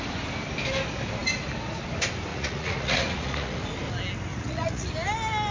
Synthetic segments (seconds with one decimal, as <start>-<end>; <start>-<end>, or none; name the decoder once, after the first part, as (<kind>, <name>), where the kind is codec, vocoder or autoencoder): 2.3-3.6 (vocoder, Vocos); 4.3-4.9